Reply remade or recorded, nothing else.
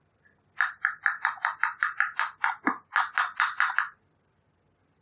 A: recorded